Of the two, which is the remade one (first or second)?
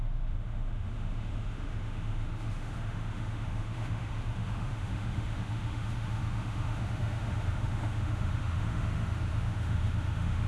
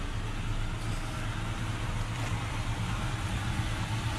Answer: first